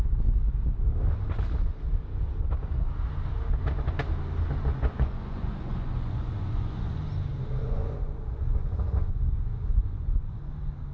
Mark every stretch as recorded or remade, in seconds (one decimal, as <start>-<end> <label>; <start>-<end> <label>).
0.0-4.7 recorded; 4.7-7.0 remade; 7.0-7.6 recorded; 7.6-10.5 remade; 10.5-10.9 recorded